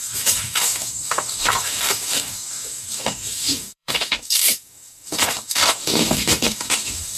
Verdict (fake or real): fake